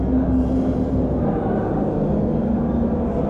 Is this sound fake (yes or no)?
no